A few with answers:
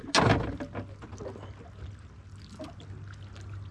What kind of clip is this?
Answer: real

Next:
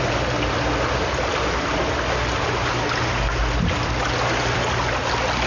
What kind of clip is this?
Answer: real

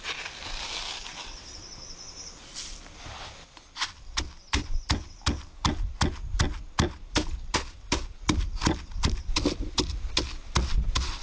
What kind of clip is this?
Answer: real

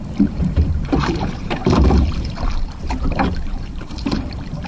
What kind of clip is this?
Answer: fake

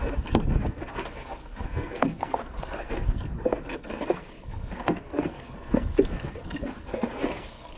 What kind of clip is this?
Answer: fake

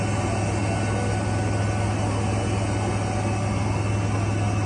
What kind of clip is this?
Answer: real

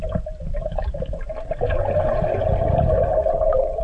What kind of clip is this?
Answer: real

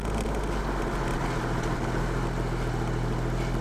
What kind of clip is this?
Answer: real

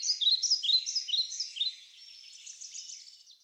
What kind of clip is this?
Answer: real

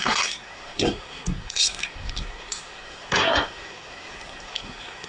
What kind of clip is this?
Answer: fake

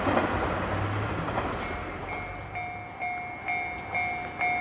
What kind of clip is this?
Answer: real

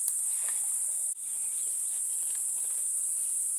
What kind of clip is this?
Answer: real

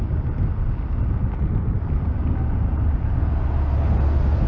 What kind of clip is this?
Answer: real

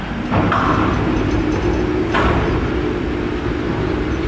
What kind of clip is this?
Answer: real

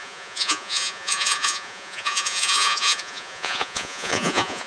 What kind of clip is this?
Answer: fake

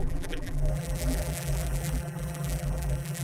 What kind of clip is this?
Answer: fake